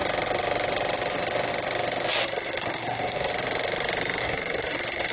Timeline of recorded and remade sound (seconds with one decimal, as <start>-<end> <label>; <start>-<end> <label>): 0.0-2.2 recorded; 2.2-3.3 remade; 3.3-4.2 recorded; 4.2-5.1 remade